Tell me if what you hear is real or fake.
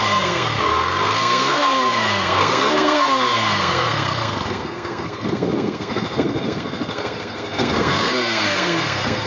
fake